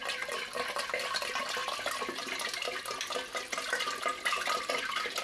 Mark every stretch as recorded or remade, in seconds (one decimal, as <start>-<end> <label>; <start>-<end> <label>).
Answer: 0.0-5.2 recorded